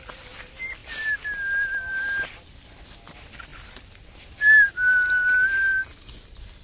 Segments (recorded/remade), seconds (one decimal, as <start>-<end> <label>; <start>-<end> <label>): 0.0-6.6 recorded